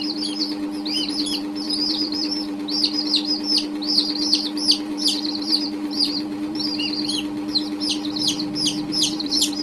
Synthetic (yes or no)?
yes